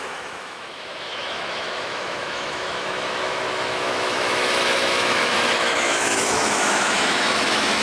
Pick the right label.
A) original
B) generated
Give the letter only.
B